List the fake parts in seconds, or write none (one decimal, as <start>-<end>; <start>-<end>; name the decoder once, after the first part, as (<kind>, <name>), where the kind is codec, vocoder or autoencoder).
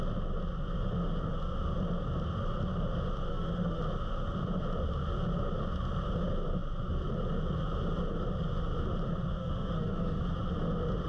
3.3-3.8 (autoencoder, DAC-VAE); 9.4-10.2